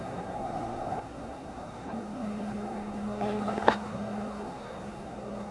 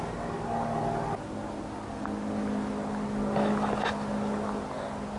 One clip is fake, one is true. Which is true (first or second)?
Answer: second